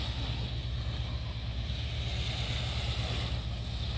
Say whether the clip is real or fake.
real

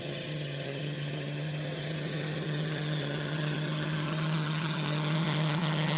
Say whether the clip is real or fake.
fake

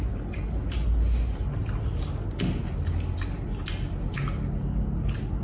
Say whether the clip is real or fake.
real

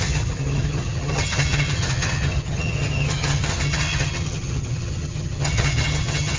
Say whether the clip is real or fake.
fake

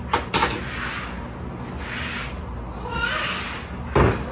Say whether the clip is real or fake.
real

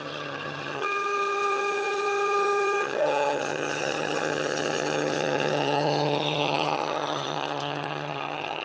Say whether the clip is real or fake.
fake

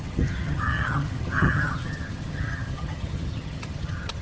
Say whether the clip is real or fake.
fake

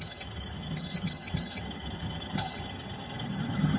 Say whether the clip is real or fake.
fake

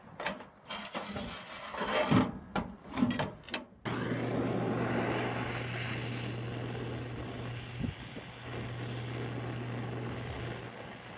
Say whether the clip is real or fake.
real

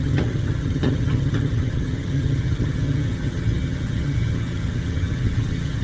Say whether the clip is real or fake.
fake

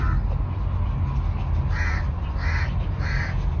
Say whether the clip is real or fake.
real